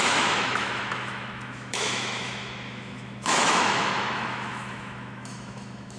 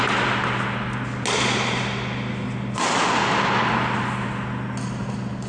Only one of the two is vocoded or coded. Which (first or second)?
first